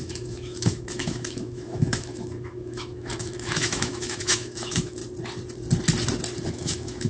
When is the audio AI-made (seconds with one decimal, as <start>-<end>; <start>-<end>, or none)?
0.0-5.0; 6.5-7.1